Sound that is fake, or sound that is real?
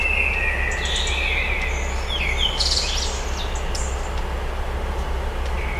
real